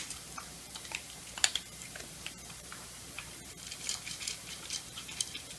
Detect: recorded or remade remade